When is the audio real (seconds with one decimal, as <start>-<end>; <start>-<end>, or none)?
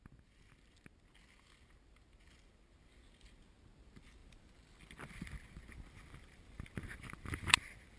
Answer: 0.0-4.2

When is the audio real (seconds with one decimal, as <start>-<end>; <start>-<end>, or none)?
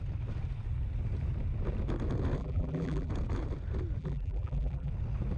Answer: 0.0-2.4; 3.1-4.0; 4.9-5.4